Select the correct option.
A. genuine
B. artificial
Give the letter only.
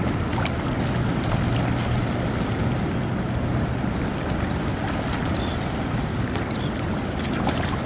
A